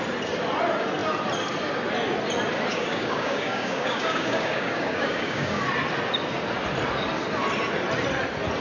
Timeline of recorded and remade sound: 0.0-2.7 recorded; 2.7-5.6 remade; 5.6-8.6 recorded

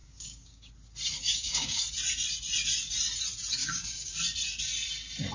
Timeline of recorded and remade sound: 0.0-0.7 remade; 0.7-1.2 recorded; 1.2-1.8 remade; 1.8-3.6 recorded; 3.6-4.2 remade; 4.2-5.3 recorded

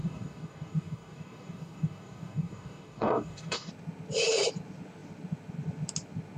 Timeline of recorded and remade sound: 0.0-3.7 remade; 3.7-6.4 recorded

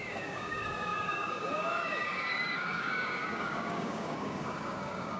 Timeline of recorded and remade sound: 0.0-5.2 remade

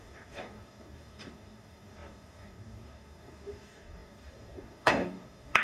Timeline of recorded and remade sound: 0.0-5.6 remade

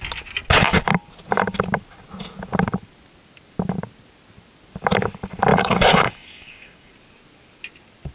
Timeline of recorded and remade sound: 0.0-5.5 recorded; 5.5-6.9 remade; 6.9-8.1 recorded

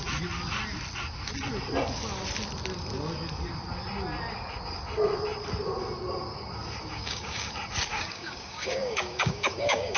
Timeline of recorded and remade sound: 0.0-6.9 recorded; 6.9-7.5 remade; 7.5-7.9 recorded; 7.9-10.0 remade